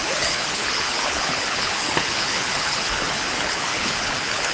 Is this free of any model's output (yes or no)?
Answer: no